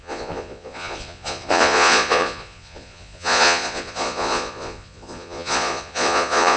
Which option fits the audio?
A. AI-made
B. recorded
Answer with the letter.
A